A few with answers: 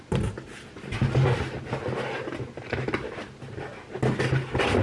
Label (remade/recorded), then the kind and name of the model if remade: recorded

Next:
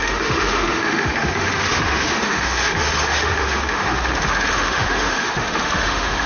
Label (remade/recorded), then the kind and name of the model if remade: remade, autoencoder, DAC-VAE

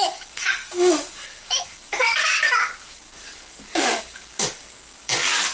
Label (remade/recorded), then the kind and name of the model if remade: remade, codec, DAC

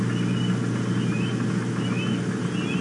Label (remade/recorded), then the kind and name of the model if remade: recorded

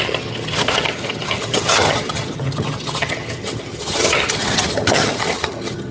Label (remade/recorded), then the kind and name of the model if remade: remade, vocoder, HiFi-GAN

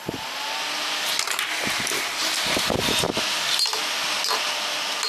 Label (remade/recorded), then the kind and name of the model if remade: recorded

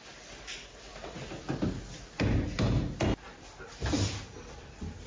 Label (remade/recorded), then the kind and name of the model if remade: remade, vocoder, BigVGAN v2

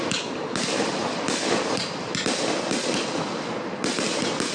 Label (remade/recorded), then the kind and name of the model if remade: recorded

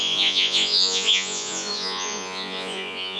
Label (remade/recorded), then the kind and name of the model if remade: remade, vocoder, Vocos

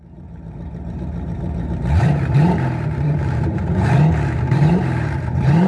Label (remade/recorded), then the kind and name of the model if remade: remade, vocoder, BigVGAN v2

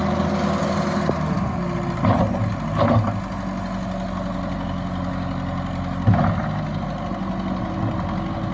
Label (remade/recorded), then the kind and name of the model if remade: recorded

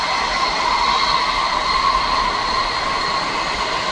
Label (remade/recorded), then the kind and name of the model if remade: recorded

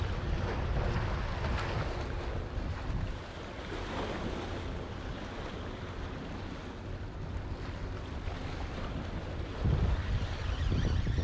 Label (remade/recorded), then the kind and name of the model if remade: recorded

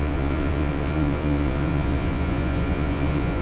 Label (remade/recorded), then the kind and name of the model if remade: remade, vocoder, Vocos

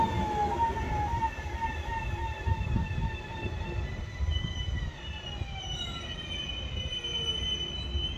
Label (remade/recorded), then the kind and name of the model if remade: recorded